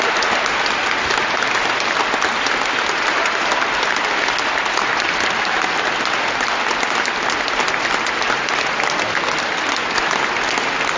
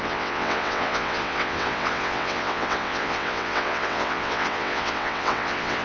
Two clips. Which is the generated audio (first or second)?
second